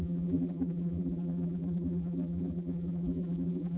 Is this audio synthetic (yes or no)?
yes